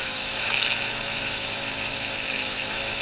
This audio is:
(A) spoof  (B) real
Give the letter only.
A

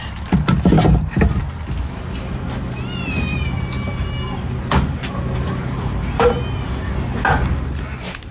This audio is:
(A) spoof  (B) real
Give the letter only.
B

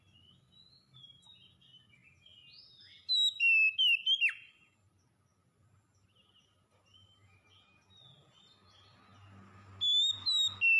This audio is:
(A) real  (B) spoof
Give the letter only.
A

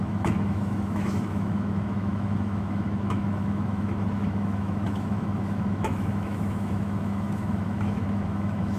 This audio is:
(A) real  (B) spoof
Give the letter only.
B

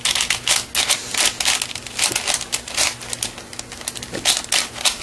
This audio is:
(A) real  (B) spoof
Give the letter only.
A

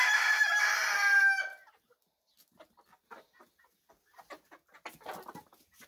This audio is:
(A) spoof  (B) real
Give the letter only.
B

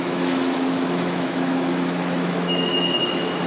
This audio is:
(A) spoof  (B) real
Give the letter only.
A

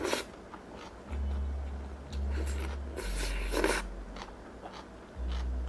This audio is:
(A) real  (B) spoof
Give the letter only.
A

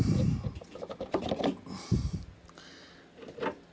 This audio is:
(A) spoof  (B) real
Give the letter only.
B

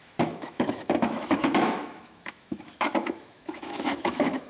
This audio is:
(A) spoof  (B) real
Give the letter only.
A